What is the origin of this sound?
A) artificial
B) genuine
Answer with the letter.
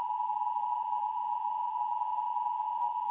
A